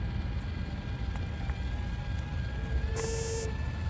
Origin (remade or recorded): recorded